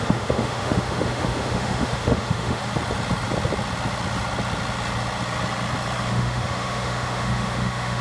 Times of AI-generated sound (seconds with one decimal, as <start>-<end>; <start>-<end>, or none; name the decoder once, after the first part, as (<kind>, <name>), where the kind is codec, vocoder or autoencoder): 0.0-2.6 (autoencoder, DAC-VAE); 6.1-8.0